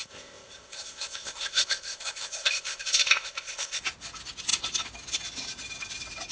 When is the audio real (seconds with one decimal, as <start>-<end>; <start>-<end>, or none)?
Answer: 3.8-6.3